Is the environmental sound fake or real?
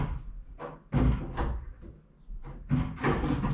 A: real